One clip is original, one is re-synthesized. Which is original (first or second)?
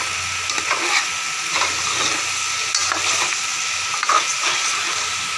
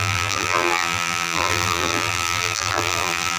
first